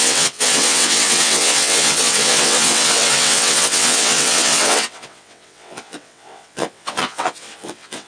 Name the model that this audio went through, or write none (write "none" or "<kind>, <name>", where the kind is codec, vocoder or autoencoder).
vocoder, WaveNeXt